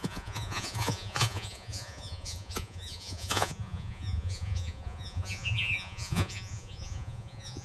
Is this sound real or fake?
fake